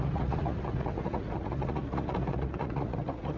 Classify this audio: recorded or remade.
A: remade